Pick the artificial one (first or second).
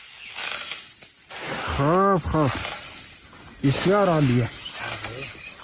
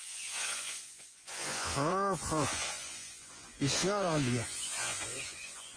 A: second